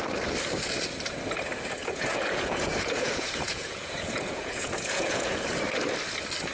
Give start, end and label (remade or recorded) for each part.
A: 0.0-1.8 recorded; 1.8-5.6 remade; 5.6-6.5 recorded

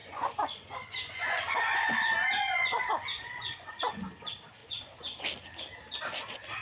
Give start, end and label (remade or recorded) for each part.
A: 0.0-4.0 remade; 4.0-4.6 recorded; 4.6-5.2 remade; 5.2-6.6 recorded

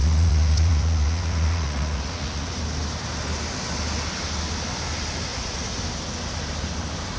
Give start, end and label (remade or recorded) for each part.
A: 0.0-2.6 remade; 2.6-5.3 recorded; 5.3-5.8 remade; 5.8-7.2 recorded

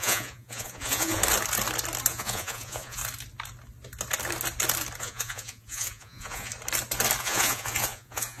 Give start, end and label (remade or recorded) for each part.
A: 0.0-1.2 remade; 1.2-2.1 recorded; 2.1-3.0 remade; 3.0-5.0 recorded; 5.0-6.5 remade; 6.5-7.2 recorded; 7.2-8.4 remade

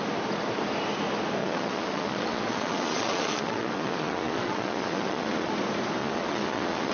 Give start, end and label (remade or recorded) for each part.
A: 0.0-1.4 recorded; 1.4-5.5 remade; 5.5-6.0 recorded; 6.0-6.9 remade

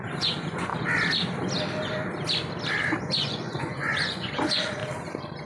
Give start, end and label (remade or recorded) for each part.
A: 0.0-0.7 remade; 0.7-3.0 recorded; 3.0-4.8 remade; 4.8-5.5 recorded

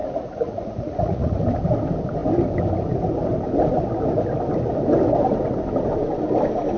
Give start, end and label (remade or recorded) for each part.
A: 0.0-1.4 remade; 1.4-6.8 recorded

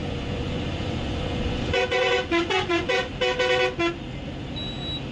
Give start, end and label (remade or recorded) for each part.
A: 0.0-3.1 remade; 3.1-5.1 recorded